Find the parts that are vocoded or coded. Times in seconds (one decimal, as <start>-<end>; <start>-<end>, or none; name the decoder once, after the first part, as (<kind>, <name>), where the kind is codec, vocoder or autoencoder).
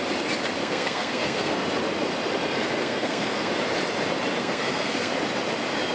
0.6-1.6 (codec, SNAC); 2.8-3.5; 4.4-5.1